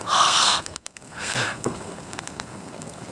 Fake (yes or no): yes